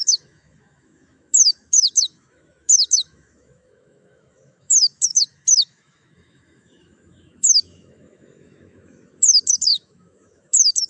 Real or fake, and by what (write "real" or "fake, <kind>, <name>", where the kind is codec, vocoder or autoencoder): fake, autoencoder, DAC-VAE